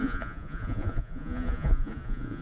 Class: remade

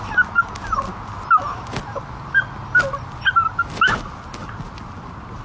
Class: recorded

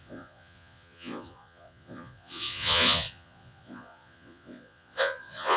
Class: remade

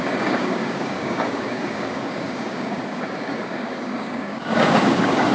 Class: remade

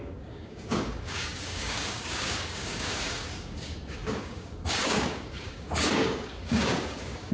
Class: remade